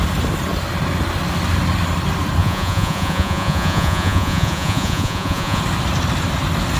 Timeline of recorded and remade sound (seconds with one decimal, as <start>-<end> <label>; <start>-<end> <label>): 0.0-2.4 recorded; 2.4-5.6 remade; 5.6-6.8 recorded